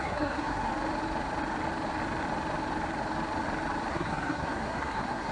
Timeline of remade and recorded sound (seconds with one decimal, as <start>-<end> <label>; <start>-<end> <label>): 0.0-0.7 remade; 0.7-3.9 recorded; 3.9-5.3 remade